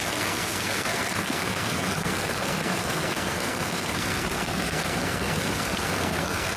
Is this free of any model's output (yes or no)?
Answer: no